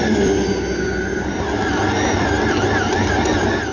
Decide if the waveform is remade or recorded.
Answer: recorded